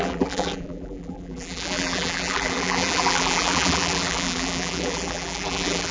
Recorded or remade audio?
remade